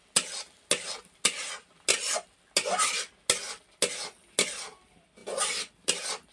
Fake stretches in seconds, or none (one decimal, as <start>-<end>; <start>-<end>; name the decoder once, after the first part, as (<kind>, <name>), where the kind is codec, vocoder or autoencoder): none